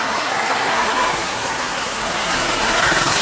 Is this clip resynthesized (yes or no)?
yes